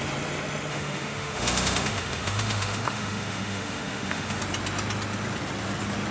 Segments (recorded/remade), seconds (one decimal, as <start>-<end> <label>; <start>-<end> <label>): 0.0-0.7 recorded; 0.7-4.4 remade; 4.4-6.1 recorded